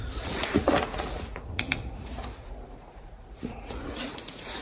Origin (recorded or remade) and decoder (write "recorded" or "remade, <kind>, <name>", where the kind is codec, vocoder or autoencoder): remade, vocoder, Vocos